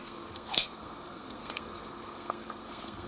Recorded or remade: remade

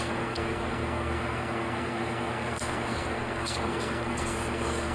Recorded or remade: remade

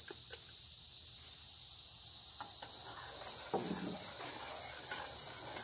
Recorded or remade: recorded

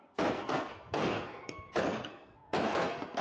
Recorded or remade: remade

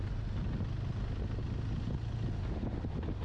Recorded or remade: recorded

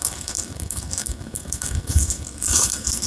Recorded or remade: remade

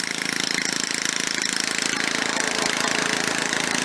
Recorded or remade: recorded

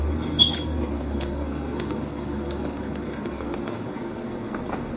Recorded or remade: remade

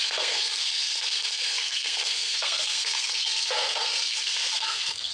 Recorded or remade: remade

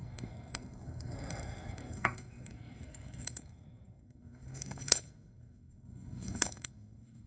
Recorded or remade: remade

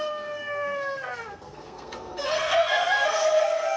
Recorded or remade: remade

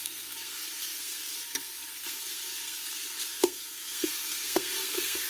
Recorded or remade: remade